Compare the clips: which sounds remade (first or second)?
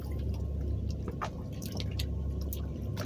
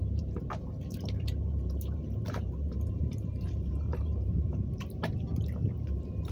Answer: second